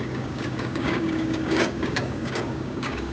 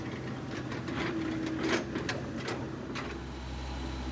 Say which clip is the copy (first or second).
first